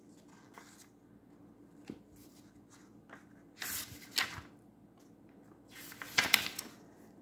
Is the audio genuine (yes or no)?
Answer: yes